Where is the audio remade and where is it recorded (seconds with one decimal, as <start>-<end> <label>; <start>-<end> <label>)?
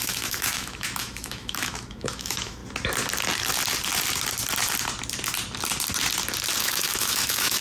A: 0.0-2.6 remade; 2.6-6.6 recorded; 6.6-7.6 remade